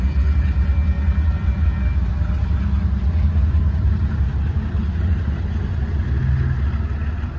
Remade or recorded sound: recorded